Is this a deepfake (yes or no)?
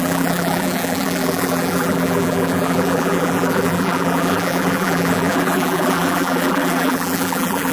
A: yes